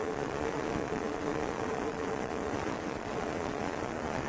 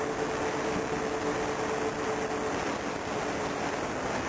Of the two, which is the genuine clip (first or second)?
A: second